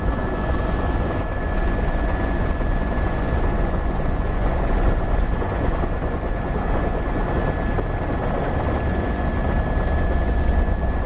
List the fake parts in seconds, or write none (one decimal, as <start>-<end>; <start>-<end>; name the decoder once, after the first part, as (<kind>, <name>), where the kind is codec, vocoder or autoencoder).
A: 0.0-7.4 (vocoder, Vocos); 8.9-9.4; 10.0-11.1

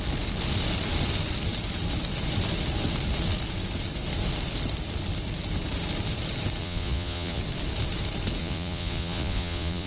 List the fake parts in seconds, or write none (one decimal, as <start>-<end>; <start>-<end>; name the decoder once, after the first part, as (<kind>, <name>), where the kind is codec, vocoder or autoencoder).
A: 6.6-7.4 (vocoder, Vocos); 8.4-9.9

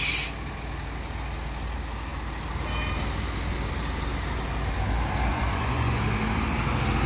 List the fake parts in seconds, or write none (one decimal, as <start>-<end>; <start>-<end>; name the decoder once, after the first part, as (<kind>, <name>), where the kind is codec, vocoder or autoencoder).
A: 5.3-6.0 (vocoder, Vocos)